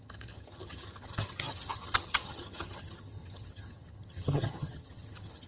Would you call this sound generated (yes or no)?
yes